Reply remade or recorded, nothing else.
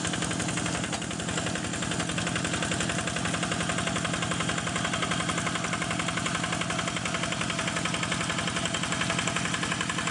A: recorded